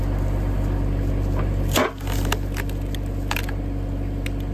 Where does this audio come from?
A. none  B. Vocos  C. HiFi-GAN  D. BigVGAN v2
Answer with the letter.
A